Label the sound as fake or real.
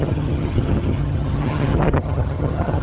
fake